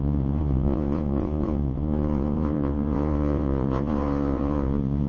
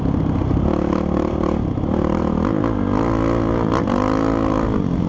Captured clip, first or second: second